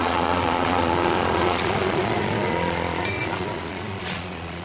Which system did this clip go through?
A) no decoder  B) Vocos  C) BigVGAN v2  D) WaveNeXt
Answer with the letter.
B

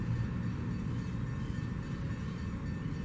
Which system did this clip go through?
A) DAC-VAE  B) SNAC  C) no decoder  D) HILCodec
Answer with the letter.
C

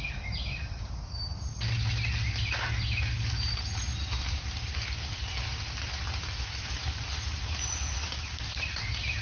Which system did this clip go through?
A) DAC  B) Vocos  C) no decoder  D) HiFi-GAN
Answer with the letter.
C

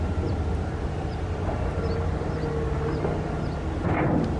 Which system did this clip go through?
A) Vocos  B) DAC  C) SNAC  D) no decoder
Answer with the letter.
D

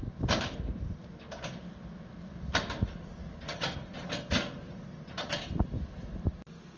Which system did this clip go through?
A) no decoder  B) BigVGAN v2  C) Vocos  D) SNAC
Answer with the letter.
A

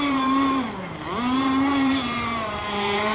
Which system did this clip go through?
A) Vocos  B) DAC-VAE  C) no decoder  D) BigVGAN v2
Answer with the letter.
D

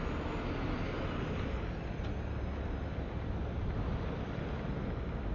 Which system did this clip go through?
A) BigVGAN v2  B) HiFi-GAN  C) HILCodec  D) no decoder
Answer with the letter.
D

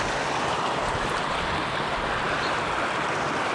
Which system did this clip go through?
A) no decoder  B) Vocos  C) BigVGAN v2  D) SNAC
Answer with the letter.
A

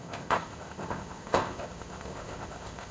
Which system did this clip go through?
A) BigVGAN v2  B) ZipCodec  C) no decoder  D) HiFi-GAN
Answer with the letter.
B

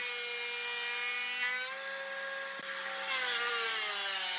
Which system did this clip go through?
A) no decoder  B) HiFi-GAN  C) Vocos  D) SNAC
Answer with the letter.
A